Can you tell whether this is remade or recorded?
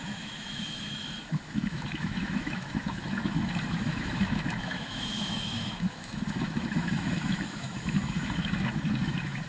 remade